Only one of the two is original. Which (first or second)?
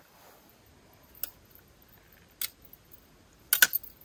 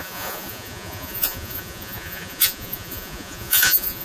first